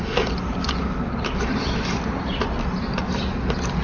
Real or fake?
real